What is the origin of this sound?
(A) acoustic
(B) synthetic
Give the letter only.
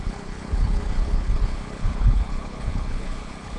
B